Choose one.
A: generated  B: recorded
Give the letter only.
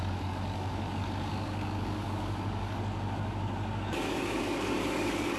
A